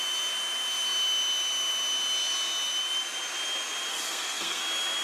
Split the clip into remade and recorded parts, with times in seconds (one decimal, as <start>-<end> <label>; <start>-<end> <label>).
0.0-3.9 recorded; 3.9-4.6 remade; 4.6-5.0 recorded